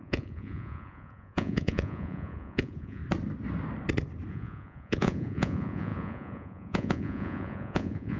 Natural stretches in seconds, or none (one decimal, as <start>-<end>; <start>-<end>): 3.0-4.3